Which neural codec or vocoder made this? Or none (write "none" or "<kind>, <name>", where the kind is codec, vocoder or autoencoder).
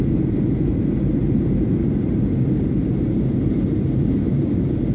vocoder, BigVGAN v2